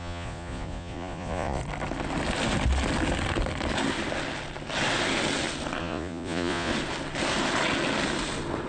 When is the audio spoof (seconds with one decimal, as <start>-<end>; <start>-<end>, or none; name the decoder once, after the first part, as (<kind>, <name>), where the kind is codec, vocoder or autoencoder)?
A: 0.0-1.6 (vocoder, Vocos); 5.8-6.7